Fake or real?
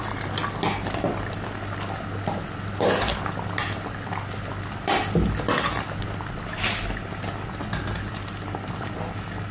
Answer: real